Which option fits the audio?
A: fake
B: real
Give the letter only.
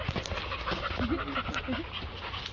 B